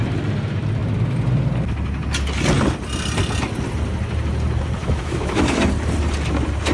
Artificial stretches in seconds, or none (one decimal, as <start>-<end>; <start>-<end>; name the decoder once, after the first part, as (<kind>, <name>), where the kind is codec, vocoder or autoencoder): 4.8-5.6 (autoencoder, DAC-VAE)